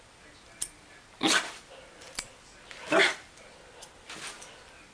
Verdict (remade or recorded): recorded